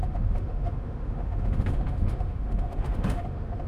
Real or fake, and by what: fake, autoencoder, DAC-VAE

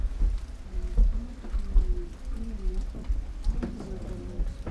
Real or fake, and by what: real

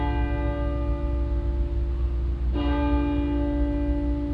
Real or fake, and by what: real